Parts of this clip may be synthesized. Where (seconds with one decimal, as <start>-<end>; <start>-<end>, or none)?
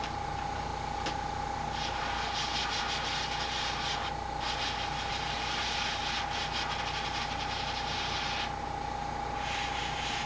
0.0-0.7; 5.1-6.0; 8.6-10.3